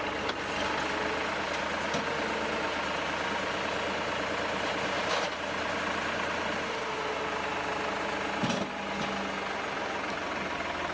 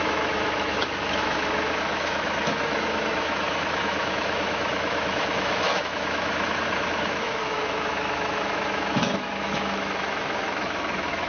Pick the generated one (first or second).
second